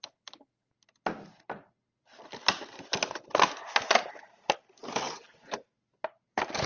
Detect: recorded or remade recorded